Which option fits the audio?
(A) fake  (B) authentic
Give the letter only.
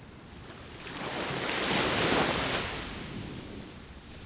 B